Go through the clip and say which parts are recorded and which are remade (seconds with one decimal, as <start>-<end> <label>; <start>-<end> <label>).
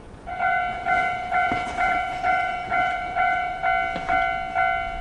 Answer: 0.0-3.6 remade; 3.6-5.0 recorded